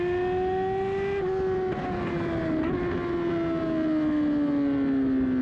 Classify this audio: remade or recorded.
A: recorded